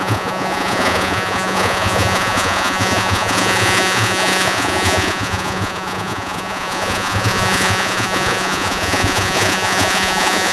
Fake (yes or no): yes